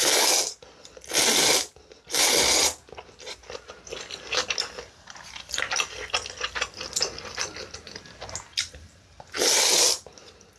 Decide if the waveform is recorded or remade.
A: recorded